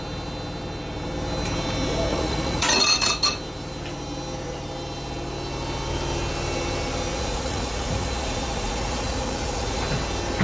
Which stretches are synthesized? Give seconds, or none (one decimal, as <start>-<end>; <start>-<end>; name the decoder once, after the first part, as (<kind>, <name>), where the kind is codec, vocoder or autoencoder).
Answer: 2.1-3.1 (vocoder, Vocos); 7.1-9.8